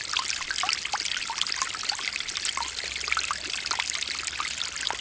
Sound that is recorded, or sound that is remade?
recorded